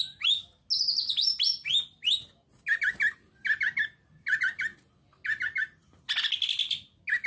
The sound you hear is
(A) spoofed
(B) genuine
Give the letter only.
B